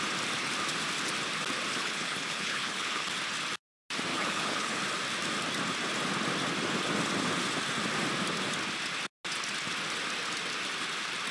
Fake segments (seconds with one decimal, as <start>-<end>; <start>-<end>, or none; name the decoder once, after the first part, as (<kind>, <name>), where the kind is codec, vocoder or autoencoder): 1.7-3.1 (codec, HILCodec); 4.1-4.8